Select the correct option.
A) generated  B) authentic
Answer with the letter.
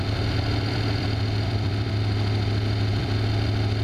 A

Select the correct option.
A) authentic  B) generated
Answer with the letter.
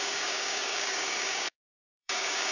B